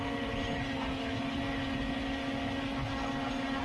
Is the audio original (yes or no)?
yes